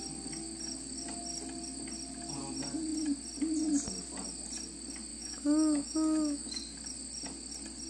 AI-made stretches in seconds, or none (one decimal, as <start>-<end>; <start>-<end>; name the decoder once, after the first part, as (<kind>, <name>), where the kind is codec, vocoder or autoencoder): 5.1-6.6 (autoencoder, DAC-VAE)